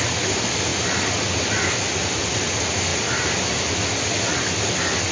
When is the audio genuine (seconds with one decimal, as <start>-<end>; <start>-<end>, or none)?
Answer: 0.0-5.1